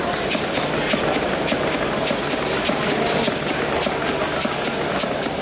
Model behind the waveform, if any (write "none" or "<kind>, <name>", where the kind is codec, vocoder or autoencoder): none